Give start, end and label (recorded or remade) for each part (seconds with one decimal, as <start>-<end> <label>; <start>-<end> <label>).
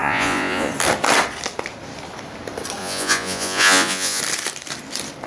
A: 0.0-0.7 remade; 0.7-2.8 recorded; 2.8-4.2 remade; 4.2-5.3 recorded